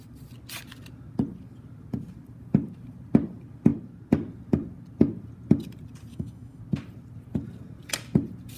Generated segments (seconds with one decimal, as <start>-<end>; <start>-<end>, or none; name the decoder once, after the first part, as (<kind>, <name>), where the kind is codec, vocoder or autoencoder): 6.1-6.6 (autoencoder, DAC-VAE)